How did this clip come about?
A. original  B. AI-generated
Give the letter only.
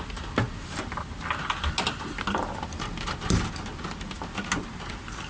A